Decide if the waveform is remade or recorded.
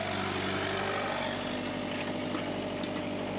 recorded